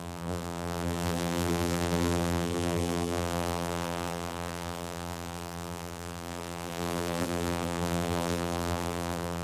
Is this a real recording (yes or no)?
no